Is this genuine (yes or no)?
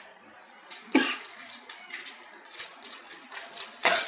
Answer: no